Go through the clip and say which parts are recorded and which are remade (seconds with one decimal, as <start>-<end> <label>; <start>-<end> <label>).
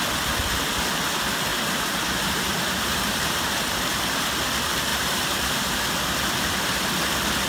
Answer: 0.0-1.5 recorded; 1.5-3.8 remade; 3.8-4.9 recorded; 4.9-5.9 remade; 5.9-7.5 recorded